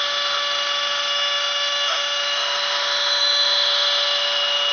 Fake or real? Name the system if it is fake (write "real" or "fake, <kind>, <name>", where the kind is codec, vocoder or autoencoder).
fake, autoencoder, DAC-VAE